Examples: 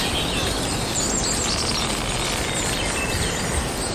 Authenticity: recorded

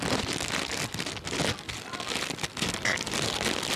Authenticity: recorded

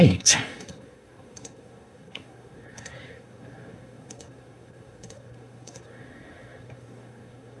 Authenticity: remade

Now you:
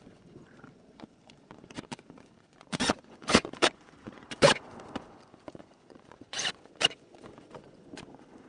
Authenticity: remade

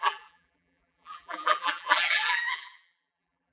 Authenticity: remade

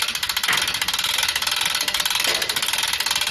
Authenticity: recorded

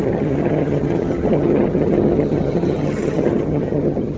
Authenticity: remade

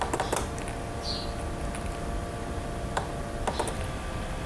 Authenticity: recorded